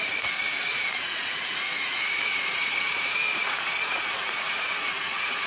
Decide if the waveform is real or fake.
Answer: fake